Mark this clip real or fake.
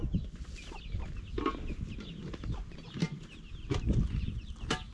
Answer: real